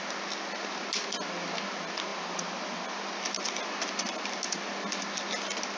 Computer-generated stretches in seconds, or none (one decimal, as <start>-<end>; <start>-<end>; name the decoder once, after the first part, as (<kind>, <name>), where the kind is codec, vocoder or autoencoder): none